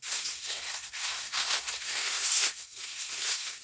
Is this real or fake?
fake